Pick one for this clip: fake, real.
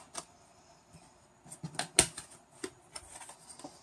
real